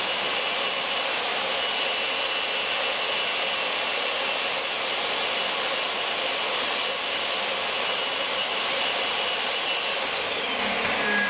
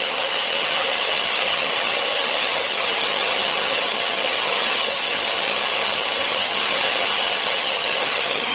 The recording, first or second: first